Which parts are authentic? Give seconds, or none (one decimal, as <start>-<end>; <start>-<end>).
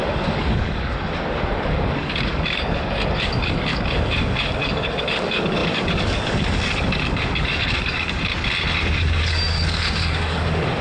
8.3-8.9